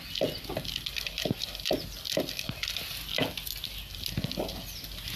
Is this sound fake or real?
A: real